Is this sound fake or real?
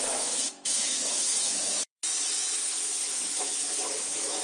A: fake